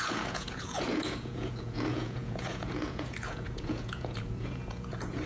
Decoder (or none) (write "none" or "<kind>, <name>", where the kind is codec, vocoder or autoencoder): vocoder, Vocos